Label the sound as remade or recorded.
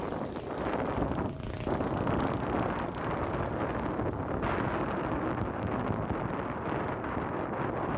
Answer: recorded